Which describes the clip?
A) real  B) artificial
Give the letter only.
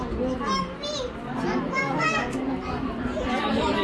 A